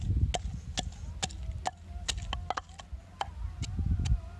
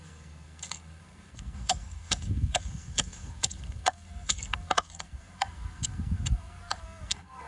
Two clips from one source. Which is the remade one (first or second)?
second